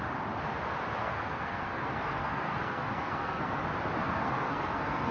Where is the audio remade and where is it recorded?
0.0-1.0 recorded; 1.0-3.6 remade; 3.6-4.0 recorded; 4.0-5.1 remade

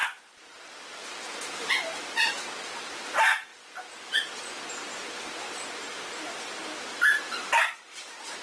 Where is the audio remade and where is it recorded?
0.0-8.4 recorded

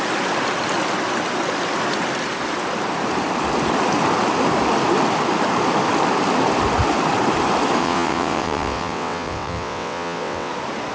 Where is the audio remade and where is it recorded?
0.0-7.8 recorded; 7.8-10.5 remade; 10.5-10.9 recorded